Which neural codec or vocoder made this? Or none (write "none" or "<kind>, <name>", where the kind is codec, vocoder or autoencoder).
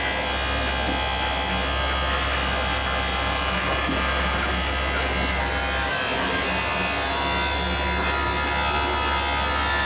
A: none